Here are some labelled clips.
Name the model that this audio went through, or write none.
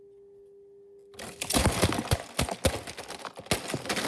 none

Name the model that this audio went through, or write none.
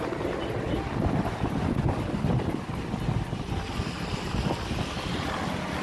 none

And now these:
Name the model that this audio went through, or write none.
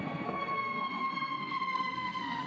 codec, SNAC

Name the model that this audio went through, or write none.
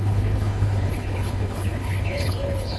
codec, HILCodec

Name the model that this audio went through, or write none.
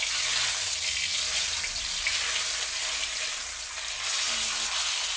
none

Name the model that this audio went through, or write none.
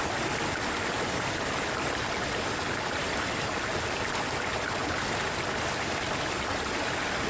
none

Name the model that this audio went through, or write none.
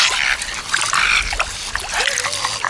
none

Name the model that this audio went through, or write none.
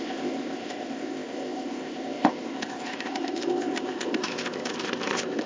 codec, ZipCodec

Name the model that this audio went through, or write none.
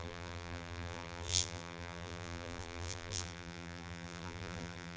vocoder, BigVGAN v2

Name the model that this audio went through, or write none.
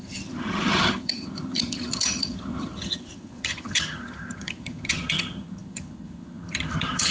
vocoder, HiFi-GAN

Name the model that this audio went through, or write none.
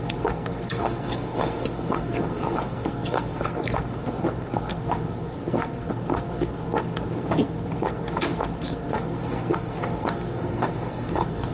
codec, SNAC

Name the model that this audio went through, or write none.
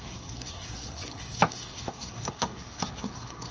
codec, SNAC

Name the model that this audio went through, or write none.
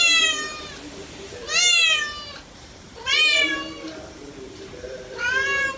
vocoder, BigVGAN v2